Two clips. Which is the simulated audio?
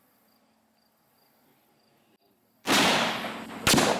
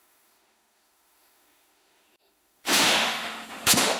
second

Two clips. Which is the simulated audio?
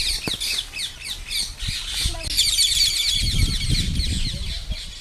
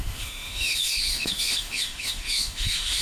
second